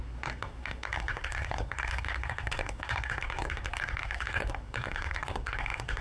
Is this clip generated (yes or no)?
yes